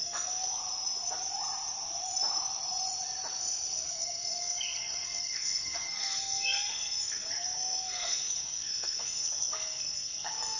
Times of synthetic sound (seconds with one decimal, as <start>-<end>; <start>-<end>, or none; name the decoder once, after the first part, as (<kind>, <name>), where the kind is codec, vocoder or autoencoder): 0.0-0.6 (codec, SNAC); 3.4-10.6